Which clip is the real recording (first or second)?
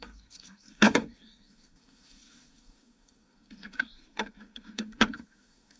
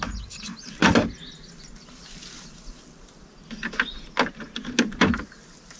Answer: second